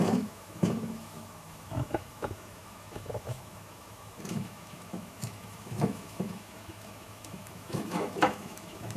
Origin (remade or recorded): remade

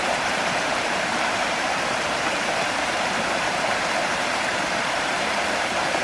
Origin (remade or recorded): remade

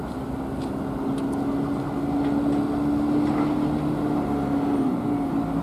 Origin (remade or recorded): recorded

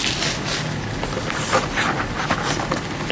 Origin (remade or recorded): recorded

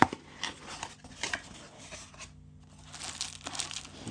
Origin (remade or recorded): recorded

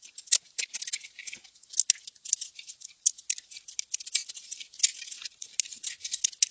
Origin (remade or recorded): recorded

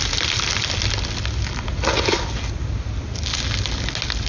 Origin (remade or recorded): recorded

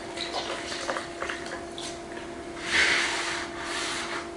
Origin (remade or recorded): recorded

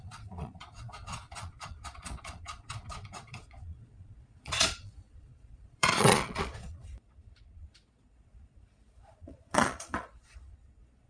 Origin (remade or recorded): remade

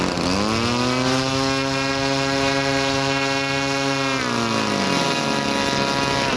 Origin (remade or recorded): recorded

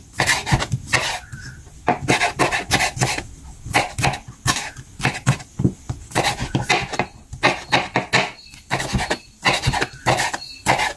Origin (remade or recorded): recorded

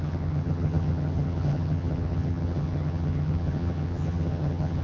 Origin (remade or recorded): remade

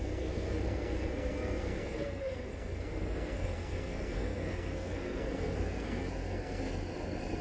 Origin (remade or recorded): remade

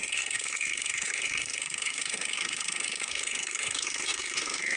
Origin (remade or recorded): remade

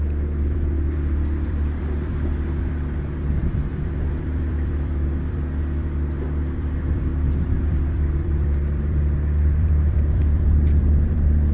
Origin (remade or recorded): remade